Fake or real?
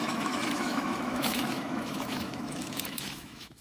fake